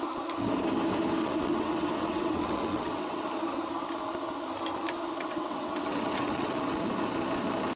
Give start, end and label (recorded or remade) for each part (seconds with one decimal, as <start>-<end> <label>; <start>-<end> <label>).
0.0-1.2 recorded; 1.2-3.3 remade; 3.3-5.2 recorded; 5.2-6.9 remade; 6.9-7.8 recorded